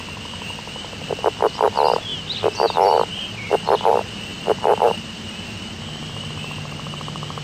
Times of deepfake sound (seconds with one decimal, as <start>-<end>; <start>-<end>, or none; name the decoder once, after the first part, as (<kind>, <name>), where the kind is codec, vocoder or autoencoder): none